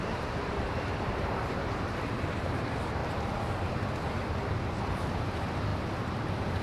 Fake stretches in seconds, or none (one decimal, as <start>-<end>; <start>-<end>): 0.0-3.0; 4.8-6.6